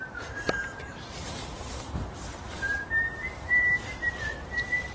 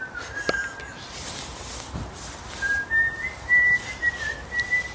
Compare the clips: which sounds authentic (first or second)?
second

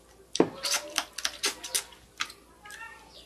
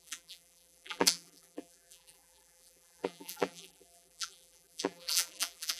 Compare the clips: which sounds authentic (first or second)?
first